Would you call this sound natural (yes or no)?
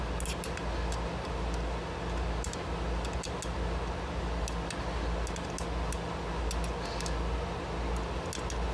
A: yes